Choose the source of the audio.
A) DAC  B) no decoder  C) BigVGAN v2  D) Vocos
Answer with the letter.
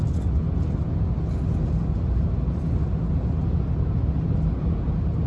B